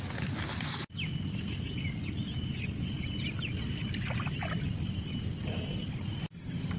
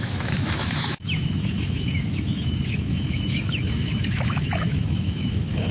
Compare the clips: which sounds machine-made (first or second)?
second